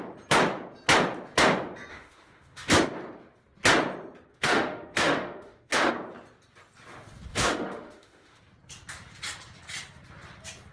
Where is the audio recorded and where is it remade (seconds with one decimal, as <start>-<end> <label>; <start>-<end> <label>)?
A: 0.0-1.9 recorded; 1.9-2.7 remade; 2.7-4.3 recorded; 4.3-5.9 remade; 5.9-7.3 recorded; 7.3-8.4 remade; 8.4-10.7 recorded